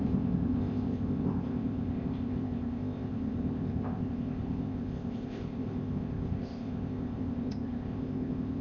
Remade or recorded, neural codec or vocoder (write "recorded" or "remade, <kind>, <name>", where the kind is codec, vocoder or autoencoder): remade, codec, ZipCodec